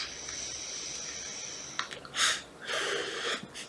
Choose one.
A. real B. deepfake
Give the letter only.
A